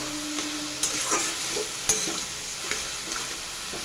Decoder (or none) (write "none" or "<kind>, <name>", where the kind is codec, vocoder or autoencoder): none